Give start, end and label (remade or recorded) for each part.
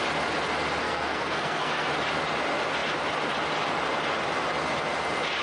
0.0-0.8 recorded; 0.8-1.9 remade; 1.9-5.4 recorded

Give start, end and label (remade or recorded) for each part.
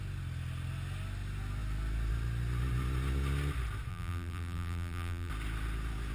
0.0-3.9 recorded; 3.9-5.3 remade; 5.3-6.1 recorded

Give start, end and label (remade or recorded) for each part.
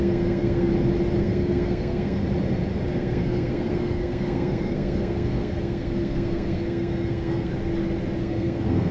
0.0-0.7 remade; 0.7-1.2 recorded; 1.2-2.2 remade; 2.2-2.9 recorded; 2.9-7.5 remade; 7.5-8.2 recorded; 8.2-8.9 remade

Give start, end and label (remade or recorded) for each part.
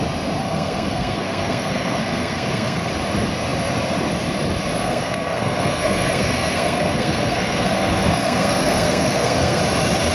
0.0-0.4 recorded; 0.4-2.9 remade; 2.9-4.8 recorded; 4.8-9.6 remade; 9.6-10.1 recorded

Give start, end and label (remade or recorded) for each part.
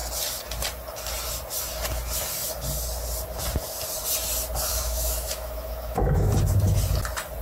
0.0-4.7 recorded; 4.7-6.3 remade; 6.3-7.4 recorded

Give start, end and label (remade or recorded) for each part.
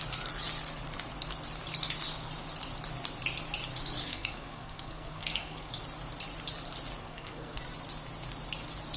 0.0-4.1 recorded; 4.1-5.7 remade; 5.7-7.0 recorded; 7.0-7.6 remade; 7.6-9.0 recorded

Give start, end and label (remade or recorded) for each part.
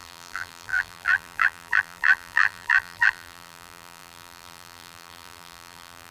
0.0-6.1 remade